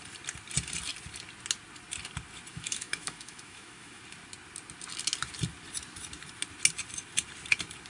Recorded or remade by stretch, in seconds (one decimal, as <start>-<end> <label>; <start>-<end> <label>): 0.0-2.5 recorded; 2.5-4.0 remade; 4.0-7.9 recorded